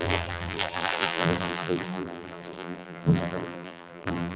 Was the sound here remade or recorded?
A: remade